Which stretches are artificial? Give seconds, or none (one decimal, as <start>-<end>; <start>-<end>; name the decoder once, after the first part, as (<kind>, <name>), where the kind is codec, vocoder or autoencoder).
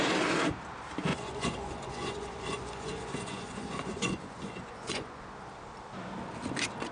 1.1-5.2 (vocoder, Vocos)